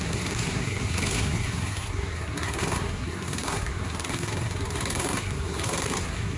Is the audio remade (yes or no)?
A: yes